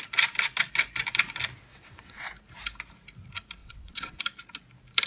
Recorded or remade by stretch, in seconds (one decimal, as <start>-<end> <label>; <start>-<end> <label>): 0.0-1.7 recorded; 1.7-2.3 remade; 2.3-3.6 recorded; 3.6-4.2 remade; 4.2-5.1 recorded